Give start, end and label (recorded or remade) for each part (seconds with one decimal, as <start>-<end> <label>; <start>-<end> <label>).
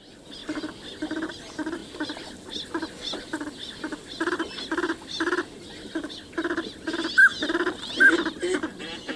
0.0-9.2 recorded